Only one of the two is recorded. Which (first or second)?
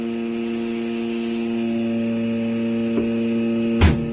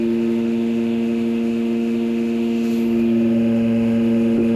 first